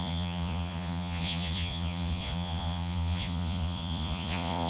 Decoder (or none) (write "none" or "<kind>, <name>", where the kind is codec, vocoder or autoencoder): vocoder, Vocos